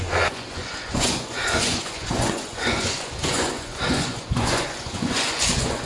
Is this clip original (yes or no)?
no